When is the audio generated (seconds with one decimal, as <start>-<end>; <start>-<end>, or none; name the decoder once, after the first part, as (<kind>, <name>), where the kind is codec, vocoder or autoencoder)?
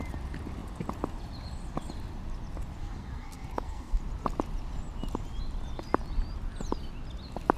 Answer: 2.8-4.0 (codec, SNAC)